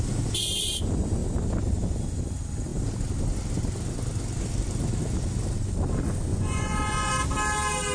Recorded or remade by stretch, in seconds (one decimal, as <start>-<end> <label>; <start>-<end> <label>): 0.0-6.3 recorded; 6.3-7.1 remade; 7.1-7.9 recorded